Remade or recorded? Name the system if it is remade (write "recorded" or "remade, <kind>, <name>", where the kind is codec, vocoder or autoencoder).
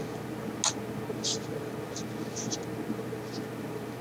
recorded